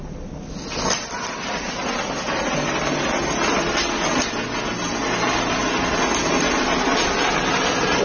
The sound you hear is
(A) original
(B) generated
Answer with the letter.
A